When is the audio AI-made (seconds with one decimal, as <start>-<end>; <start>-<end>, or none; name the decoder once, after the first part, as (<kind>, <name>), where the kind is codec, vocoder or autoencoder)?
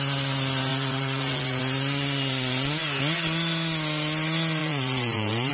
0.7-1.6 (vocoder, Vocos); 4.6-5.5